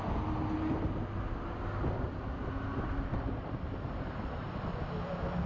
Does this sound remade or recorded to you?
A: recorded